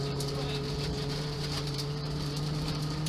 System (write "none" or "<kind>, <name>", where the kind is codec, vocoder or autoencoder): vocoder, BigVGAN v2